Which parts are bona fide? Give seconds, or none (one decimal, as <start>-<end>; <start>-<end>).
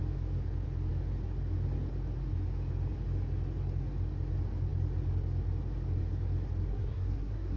0.0-6.7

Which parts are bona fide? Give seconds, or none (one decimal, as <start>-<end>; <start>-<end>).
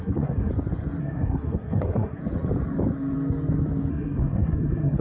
0.5-1.0; 2.2-3.9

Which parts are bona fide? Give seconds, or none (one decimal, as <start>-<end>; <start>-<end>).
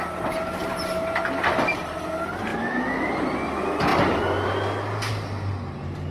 0.0-2.5; 3.1-6.1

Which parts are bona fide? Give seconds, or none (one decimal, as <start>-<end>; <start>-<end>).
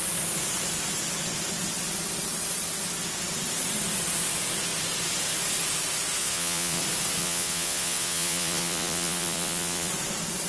0.0-6.2; 6.8-7.2; 9.9-10.5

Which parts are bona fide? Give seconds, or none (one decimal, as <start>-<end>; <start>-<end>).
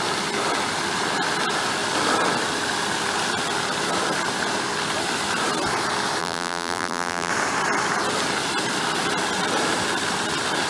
0.0-6.2; 7.3-10.7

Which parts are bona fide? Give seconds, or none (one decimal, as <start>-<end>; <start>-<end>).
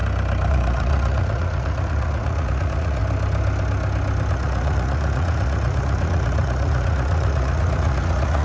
0.0-0.5; 3.0-4.3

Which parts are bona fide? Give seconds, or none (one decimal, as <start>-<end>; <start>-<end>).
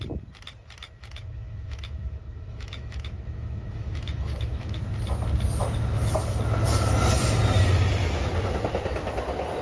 0.0-1.0; 4.8-5.6; 6.1-9.6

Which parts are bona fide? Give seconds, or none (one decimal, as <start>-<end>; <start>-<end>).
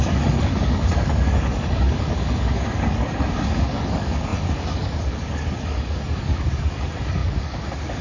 none